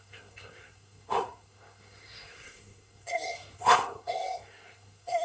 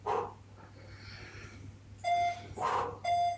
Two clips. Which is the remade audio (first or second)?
first